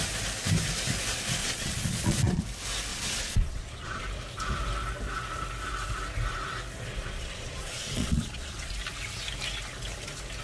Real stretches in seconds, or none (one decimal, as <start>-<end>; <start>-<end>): 0.0-1.4; 2.4-2.9; 4.0-6.9; 8.7-10.4